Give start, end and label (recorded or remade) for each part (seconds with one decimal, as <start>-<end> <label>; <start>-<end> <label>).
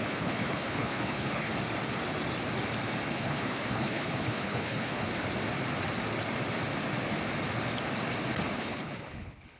0.0-1.5 remade; 1.5-3.1 recorded; 3.1-5.1 remade; 5.1-8.6 recorded; 8.6-9.6 remade